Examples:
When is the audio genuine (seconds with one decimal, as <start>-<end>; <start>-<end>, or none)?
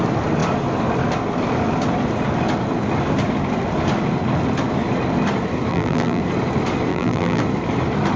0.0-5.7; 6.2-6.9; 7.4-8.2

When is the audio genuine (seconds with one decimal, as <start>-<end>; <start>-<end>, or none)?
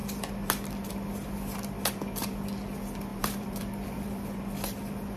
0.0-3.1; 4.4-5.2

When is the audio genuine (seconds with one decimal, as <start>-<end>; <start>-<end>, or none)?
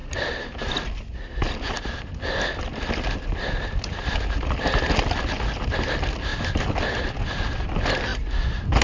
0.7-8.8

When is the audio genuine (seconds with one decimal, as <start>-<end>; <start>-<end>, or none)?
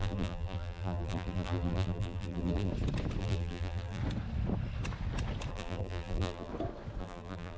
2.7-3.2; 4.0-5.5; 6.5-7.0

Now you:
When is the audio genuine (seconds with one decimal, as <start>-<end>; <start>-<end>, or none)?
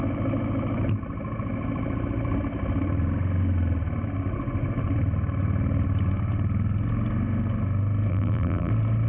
0.0-8.1; 8.7-9.1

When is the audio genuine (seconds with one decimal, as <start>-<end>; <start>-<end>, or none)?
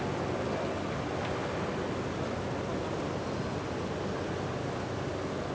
0.0-1.4; 2.4-5.5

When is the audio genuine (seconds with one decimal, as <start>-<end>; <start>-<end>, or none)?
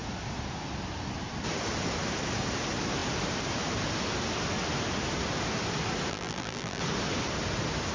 0.0-6.1; 6.8-7.9